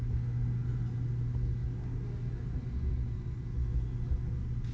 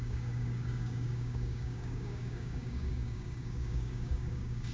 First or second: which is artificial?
second